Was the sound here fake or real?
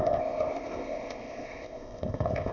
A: fake